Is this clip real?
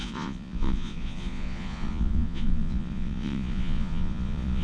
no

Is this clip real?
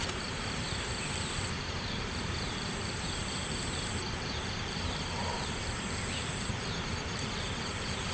no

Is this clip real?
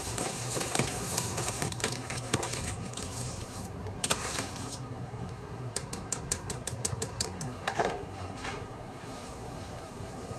no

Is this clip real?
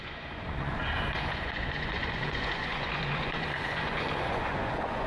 no